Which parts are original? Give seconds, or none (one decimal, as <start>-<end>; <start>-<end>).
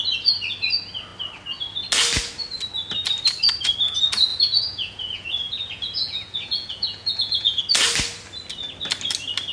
0.0-4.3; 7.6-9.5